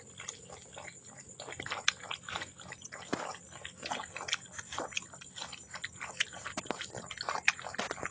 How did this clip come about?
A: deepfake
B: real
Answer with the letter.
B